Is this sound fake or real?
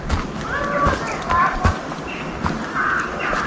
real